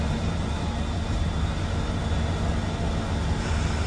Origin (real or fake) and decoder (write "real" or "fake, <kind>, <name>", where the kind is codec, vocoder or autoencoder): real